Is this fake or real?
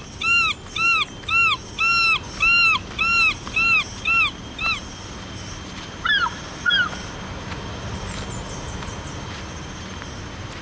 real